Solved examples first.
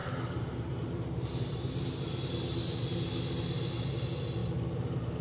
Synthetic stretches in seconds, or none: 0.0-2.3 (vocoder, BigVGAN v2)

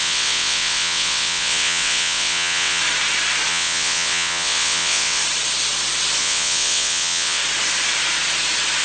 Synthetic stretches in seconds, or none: 0.0-2.8 (vocoder, WaveNeXt); 3.5-5.2; 6.2-7.4